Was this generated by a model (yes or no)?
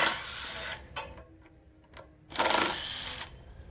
no